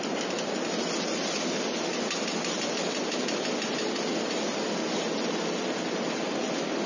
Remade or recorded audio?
recorded